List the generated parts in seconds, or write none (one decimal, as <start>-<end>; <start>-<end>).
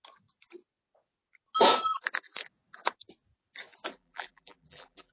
3.9-5.1